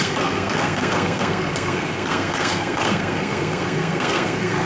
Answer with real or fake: fake